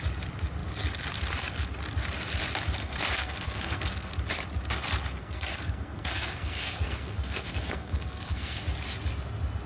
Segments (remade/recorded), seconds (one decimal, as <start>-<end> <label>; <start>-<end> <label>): 0.0-2.8 recorded; 2.8-4.1 remade; 4.1-5.2 recorded; 5.2-8.6 remade; 8.6-9.7 recorded